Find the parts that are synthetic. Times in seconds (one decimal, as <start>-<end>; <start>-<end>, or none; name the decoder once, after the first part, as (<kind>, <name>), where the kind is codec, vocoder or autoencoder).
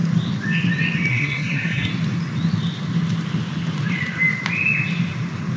1.1-1.9 (codec, SNAC)